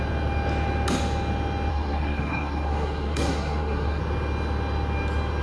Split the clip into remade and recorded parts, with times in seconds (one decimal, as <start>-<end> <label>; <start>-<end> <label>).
0.0-1.7 recorded; 1.7-4.0 remade; 4.0-5.4 recorded